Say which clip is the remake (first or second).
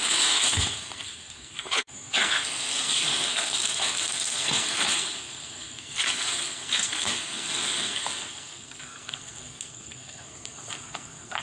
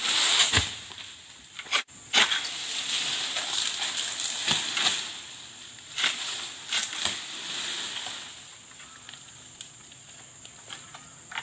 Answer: first